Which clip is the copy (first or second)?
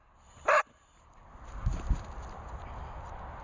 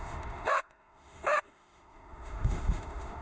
second